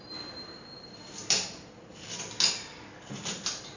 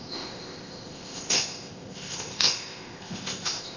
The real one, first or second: first